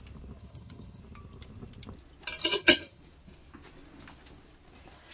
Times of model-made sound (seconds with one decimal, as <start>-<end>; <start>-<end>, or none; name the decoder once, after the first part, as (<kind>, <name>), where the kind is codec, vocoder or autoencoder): 0.4-1.0 (vocoder, HiFi-GAN); 2.4-3.0